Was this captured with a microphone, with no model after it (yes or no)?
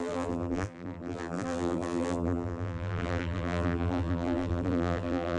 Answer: no